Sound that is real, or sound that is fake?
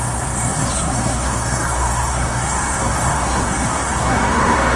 fake